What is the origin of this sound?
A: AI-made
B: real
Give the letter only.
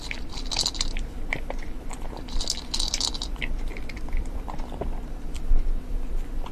B